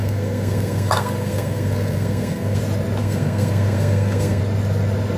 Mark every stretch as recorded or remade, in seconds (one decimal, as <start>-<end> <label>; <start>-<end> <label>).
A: 0.0-2.6 remade; 2.6-3.0 recorded; 3.0-4.4 remade; 4.4-5.2 recorded